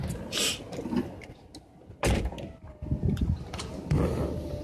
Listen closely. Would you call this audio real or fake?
real